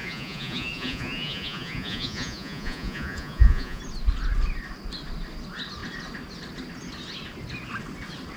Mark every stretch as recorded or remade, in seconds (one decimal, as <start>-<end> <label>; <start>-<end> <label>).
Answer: 0.0-3.8 remade; 3.8-8.4 recorded